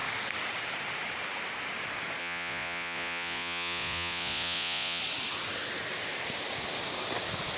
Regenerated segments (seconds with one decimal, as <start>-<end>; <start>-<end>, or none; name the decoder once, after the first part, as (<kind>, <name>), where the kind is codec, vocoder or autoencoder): 2.2-5.0 (vocoder, Vocos)